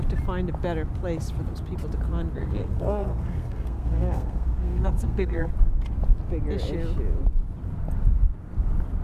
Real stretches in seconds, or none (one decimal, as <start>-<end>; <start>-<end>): 0.0-2.4; 5.5-9.0